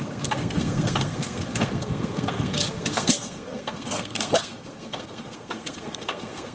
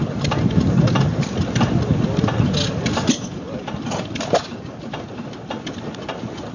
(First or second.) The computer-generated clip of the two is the first